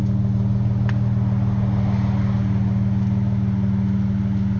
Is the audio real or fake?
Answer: real